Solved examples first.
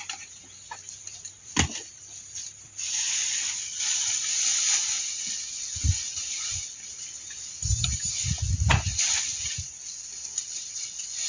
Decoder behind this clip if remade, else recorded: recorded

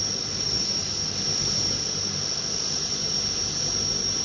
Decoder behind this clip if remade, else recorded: recorded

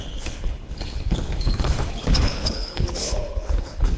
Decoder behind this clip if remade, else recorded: remade, codec, HILCodec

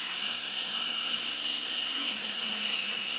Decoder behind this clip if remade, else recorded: remade, codec, SNAC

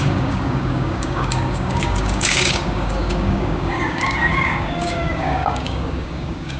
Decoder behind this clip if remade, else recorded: remade, codec, DAC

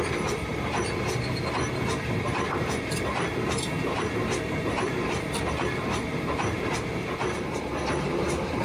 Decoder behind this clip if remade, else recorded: remade, vocoder, BigVGAN v2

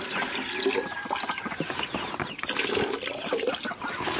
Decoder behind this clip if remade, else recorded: recorded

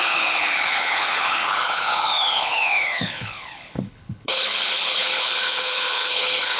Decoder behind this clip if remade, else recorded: remade, codec, HILCodec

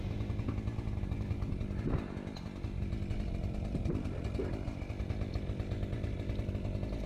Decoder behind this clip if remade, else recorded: recorded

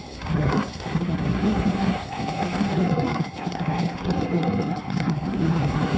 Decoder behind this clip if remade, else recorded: remade, codec, SNAC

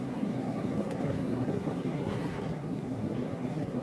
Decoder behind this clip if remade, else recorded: remade, codec, SNAC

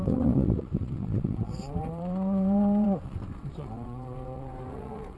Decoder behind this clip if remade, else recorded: remade, vocoder, WaveNeXt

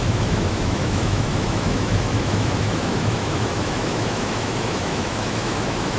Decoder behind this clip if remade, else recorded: remade, autoencoder, DAC-VAE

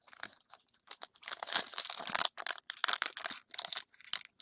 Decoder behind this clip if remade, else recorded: remade, vocoder, BigVGAN v2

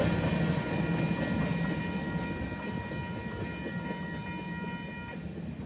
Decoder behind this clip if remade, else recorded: recorded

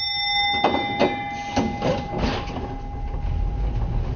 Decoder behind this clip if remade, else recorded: recorded